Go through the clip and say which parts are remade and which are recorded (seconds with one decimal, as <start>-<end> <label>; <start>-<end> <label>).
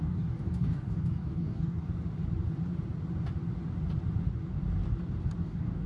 0.0-1.9 remade; 1.9-5.4 recorded; 5.4-5.9 remade